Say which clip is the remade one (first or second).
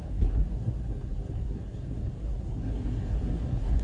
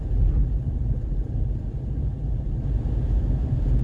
first